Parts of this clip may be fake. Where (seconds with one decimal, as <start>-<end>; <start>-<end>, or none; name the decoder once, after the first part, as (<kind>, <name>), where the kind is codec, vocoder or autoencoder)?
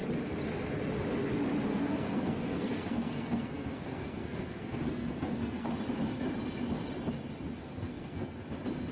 1.7-5.7 (codec, SNAC); 7.6-8.4